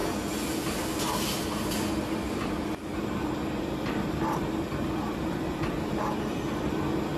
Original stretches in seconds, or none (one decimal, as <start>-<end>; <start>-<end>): 0.0-7.2